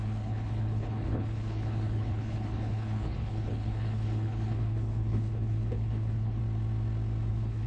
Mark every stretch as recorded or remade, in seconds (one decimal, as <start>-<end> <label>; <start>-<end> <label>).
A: 0.0-6.4 remade; 6.4-7.3 recorded; 7.3-7.7 remade